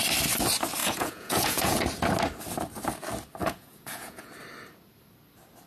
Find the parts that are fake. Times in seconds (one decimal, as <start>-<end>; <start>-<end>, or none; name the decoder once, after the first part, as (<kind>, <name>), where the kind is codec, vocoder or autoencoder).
0.8-1.8 (vocoder, Vocos); 3.4-4.3